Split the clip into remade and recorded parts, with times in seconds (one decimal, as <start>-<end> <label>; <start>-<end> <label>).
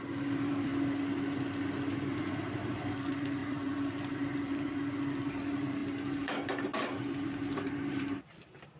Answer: 0.0-0.7 remade; 0.7-2.3 recorded; 2.3-8.8 remade